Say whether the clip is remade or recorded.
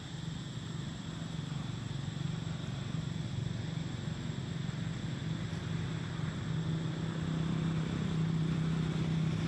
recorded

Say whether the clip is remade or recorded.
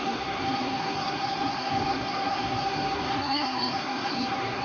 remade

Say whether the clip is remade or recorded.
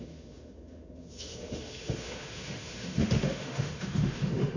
remade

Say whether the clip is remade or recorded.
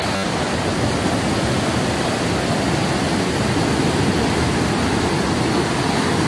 recorded